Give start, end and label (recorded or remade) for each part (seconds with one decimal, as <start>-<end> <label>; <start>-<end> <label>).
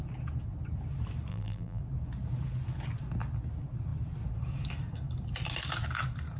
0.0-1.3 recorded; 1.3-1.8 remade; 1.8-6.4 recorded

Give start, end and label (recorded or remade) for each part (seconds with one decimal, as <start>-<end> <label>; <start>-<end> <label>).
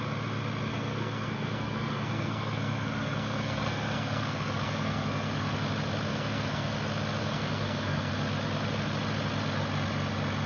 0.0-0.7 recorded; 0.7-5.5 remade; 5.5-6.1 recorded; 6.1-6.7 remade; 6.7-7.2 recorded; 7.2-8.1 remade; 8.1-10.5 recorded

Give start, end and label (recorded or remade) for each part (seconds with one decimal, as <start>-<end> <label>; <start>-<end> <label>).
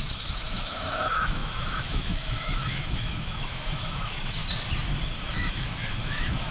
0.0-4.4 remade; 4.4-5.3 recorded; 5.3-6.5 remade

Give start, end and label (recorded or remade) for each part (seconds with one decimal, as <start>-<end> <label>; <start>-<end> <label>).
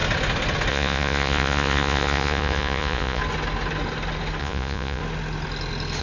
0.0-0.7 recorded; 0.7-3.2 remade; 3.2-4.4 recorded; 4.4-5.0 remade; 5.0-6.0 recorded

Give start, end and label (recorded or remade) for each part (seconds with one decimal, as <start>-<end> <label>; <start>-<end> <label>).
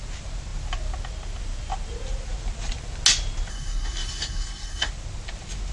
0.0-3.5 recorded; 3.5-4.9 remade; 4.9-5.7 recorded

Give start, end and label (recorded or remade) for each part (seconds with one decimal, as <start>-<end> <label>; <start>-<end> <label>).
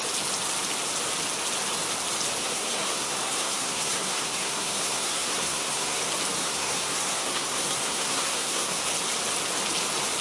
0.0-2.4 recorded; 2.4-6.0 remade; 6.0-6.4 recorded; 6.4-8.8 remade; 8.8-10.2 recorded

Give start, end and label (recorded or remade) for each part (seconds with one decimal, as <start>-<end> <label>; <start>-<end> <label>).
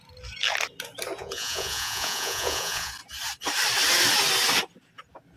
0.0-1.2 recorded; 1.2-2.9 remade; 2.9-5.4 recorded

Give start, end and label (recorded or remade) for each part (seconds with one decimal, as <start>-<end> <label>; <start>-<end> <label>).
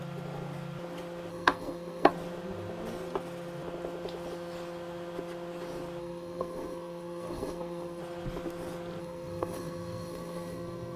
0.0-1.3 recorded; 1.3-2.1 remade; 2.1-6.0 recorded; 6.0-8.0 remade; 8.0-9.0 recorded; 9.0-11.0 remade